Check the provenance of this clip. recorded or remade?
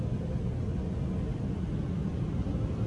recorded